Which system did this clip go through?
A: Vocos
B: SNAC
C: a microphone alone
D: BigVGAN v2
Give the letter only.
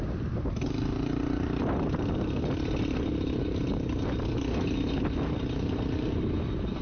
C